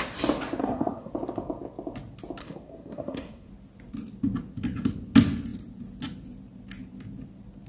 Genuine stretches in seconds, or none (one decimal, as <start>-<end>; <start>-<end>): 0.0-0.6; 1.1-2.4; 3.5-7.7